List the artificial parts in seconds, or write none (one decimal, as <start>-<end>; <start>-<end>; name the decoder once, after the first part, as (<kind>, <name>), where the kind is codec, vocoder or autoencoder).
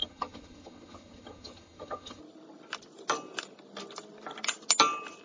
0.0-2.2 (vocoder, HiFi-GAN)